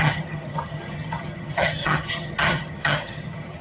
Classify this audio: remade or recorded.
remade